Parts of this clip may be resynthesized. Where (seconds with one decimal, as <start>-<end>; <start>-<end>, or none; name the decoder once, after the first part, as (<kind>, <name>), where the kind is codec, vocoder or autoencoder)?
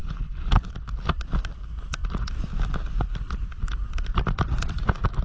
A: 0.0-0.6 (codec, HILCodec)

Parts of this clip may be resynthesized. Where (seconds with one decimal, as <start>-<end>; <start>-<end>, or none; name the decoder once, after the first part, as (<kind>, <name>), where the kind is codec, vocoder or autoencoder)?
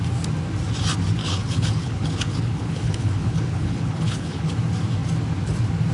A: 1.2-4.5 (codec, HILCodec)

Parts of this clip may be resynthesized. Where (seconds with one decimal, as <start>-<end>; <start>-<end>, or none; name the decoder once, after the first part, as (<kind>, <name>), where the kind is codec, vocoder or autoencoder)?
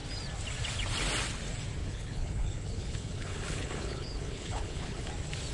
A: 1.8-5.1 (codec, HILCodec)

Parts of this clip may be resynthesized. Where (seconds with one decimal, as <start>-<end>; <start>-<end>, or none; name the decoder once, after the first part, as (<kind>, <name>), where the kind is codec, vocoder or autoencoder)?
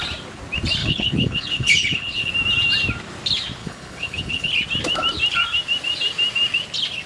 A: 0.8-2.3 (codec, HILCodec); 3.6-4.5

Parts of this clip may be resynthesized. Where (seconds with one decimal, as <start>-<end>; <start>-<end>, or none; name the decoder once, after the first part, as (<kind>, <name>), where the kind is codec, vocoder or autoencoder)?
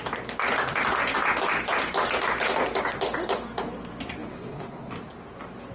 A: 4.2-4.9 (codec, HILCodec)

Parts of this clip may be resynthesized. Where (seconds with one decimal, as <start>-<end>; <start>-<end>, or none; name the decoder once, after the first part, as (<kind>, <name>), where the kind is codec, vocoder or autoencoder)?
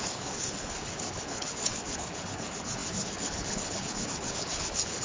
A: 0.0-5.0 (codec, HILCodec)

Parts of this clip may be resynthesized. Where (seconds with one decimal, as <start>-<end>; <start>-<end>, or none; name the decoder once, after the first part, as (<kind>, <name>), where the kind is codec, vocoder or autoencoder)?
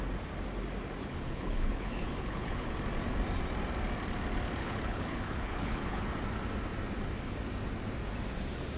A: 1.0-2.7 (codec, HILCodec); 4.6-6.1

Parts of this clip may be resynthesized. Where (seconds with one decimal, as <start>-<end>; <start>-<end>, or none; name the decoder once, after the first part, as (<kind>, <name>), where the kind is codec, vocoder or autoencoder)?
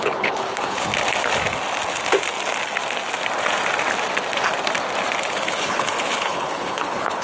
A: 0.0-0.9 (codec, HILCodec); 5.2-7.2